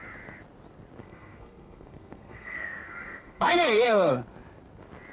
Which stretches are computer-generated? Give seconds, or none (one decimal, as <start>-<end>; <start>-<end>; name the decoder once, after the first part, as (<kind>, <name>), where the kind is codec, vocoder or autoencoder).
1.0-4.1 (codec, SNAC)